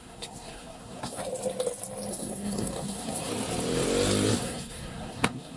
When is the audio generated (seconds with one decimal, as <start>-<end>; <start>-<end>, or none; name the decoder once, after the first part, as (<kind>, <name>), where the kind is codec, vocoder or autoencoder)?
0.0-1.2 (codec, SNAC); 2.1-3.3; 4.3-5.6